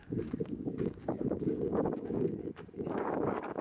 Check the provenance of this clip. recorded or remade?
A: remade